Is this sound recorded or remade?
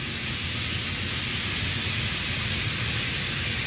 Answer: recorded